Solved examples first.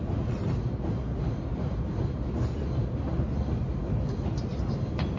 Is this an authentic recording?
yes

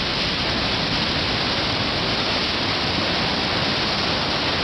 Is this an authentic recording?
yes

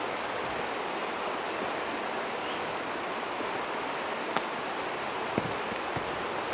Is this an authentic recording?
yes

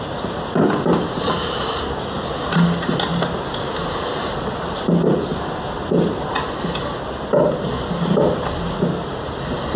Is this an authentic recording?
yes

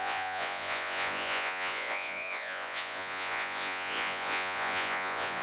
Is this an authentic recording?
no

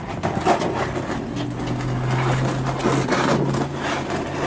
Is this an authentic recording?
yes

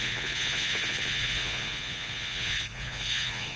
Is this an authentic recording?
no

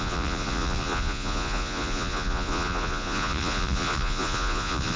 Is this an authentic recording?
no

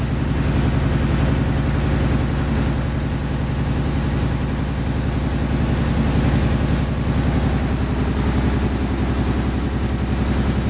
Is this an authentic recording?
yes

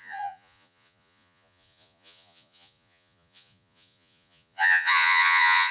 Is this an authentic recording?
no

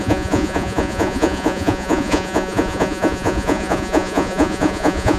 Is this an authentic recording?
no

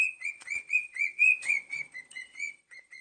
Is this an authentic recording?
no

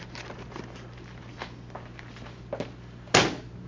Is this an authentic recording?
yes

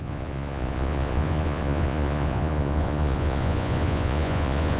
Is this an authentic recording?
no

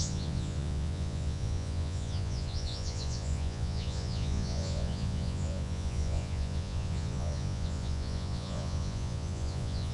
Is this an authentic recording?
no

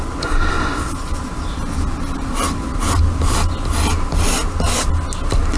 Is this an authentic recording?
yes